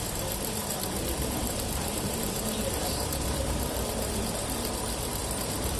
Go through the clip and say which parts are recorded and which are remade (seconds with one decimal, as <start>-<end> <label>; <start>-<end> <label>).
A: 0.0-0.6 recorded; 0.6-4.1 remade; 4.1-5.8 recorded